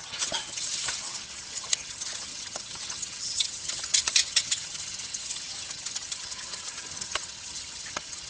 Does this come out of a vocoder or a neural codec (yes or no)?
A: yes